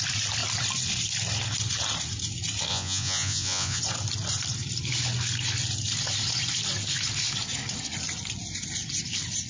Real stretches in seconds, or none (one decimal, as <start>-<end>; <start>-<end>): 0.0-2.7; 3.8-9.5